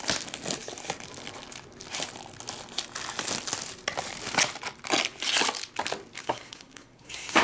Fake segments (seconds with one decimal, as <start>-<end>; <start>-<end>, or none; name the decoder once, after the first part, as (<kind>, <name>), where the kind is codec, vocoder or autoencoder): 6.2-7.4 (codec, SNAC)